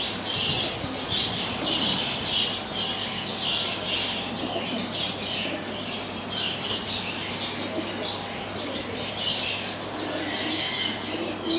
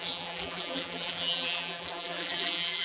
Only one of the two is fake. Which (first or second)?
second